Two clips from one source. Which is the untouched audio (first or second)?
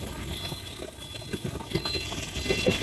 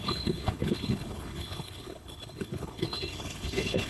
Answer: first